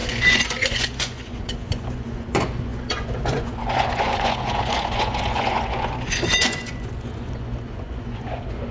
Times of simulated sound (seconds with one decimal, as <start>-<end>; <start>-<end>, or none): 0.0-8.7